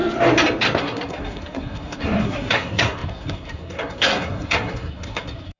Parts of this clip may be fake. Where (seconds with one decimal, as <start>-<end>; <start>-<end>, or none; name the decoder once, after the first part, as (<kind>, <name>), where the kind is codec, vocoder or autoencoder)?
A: 0.8-5.6 (codec, SNAC)